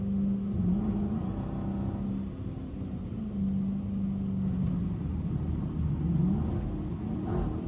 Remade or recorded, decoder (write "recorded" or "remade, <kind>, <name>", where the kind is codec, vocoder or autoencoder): recorded